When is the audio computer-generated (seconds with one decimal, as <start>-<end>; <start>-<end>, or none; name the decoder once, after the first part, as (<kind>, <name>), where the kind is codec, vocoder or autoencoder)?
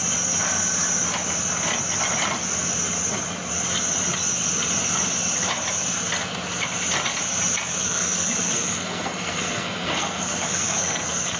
7.8-11.4 (codec, SNAC)